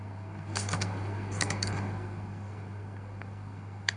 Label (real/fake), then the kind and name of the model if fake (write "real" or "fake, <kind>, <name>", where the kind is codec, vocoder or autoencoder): fake, codec, SNAC